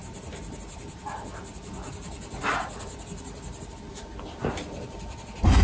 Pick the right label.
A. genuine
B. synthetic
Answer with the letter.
A